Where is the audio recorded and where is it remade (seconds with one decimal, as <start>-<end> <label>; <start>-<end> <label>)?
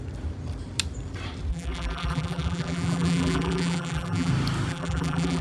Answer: 0.0-1.5 recorded; 1.5-4.3 remade; 4.3-4.7 recorded; 4.7-5.4 remade